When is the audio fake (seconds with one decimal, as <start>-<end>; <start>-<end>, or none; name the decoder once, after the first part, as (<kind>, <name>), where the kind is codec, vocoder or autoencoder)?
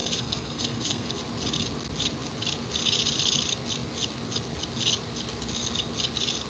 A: 0.0-1.2 (codec, SNAC)